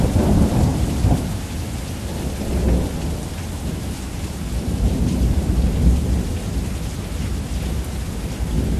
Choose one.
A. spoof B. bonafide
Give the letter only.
B